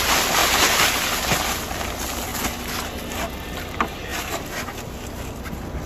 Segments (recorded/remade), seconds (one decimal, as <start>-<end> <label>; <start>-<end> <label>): 0.0-5.9 recorded